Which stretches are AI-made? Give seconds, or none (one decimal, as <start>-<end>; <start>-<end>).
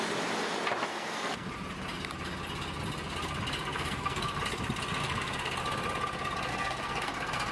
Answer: 0.9-1.5; 3.7-4.4; 5.0-5.6; 6.5-7.5